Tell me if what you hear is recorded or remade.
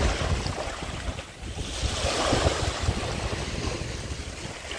recorded